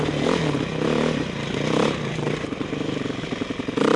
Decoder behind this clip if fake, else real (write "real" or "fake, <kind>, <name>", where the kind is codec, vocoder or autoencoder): real